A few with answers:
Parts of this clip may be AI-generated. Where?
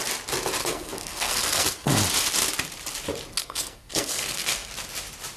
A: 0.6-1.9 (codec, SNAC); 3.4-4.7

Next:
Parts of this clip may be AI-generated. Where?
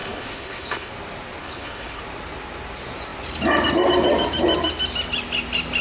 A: 0.0-0.9 (codec, HILCodec); 1.4-2.0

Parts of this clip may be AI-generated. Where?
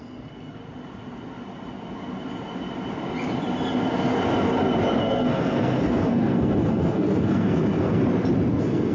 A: 0.0-0.6 (codec, SNAC); 5.0-8.0; 8.5-8.9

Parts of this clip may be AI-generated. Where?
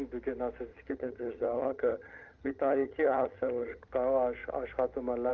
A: 0.7-3.9 (vocoder, HiFi-GAN)